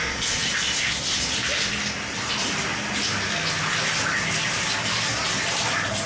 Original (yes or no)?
yes